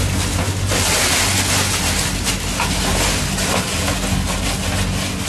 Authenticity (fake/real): real